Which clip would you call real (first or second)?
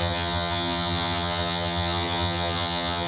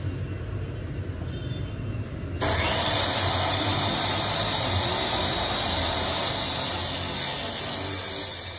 second